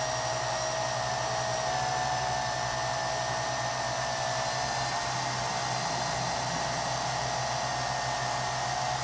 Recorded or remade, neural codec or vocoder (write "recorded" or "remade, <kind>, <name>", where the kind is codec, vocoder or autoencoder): recorded